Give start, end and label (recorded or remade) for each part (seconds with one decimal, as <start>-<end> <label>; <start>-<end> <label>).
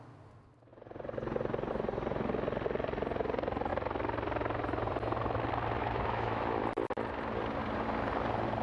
0.0-5.8 recorded; 5.8-6.6 remade; 6.6-8.6 recorded